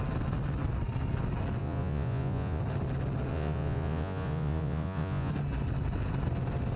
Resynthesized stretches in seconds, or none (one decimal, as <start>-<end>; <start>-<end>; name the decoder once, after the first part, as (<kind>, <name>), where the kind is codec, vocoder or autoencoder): 1.6-2.6 (vocoder, Vocos); 3.3-5.3